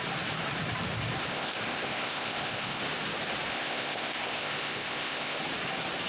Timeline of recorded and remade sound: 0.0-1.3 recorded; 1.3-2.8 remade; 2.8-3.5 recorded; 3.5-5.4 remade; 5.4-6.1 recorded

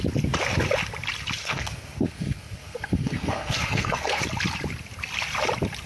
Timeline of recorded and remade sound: 0.0-1.4 recorded; 1.4-4.2 remade; 4.2-5.9 recorded

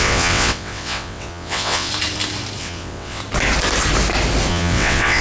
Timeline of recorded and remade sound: 0.0-1.9 remade; 1.9-2.6 recorded; 2.6-3.2 remade; 3.2-4.5 recorded; 4.5-5.2 remade